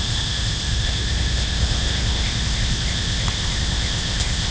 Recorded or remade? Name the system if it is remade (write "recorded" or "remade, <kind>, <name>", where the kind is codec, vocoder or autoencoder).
remade, codec, ZipCodec